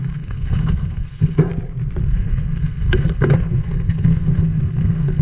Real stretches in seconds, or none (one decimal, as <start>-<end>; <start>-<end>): 1.5-2.0